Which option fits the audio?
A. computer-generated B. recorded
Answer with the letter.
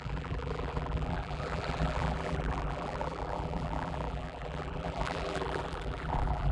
A